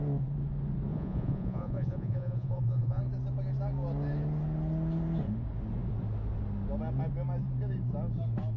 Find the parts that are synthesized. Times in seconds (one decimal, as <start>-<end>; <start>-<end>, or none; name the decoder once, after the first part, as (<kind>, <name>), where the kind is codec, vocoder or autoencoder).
0.9-3.0 (vocoder, Vocos)